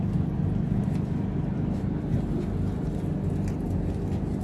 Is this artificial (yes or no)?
no